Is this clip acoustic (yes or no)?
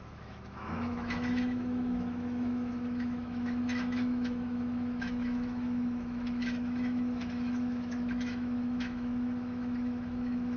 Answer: no